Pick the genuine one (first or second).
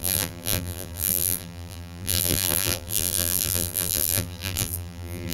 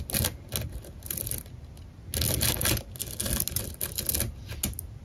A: second